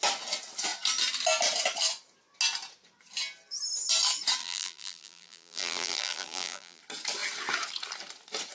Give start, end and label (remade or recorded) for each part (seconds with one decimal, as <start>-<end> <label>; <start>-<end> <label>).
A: 0.0-4.4 recorded; 4.4-6.8 remade; 6.8-8.5 recorded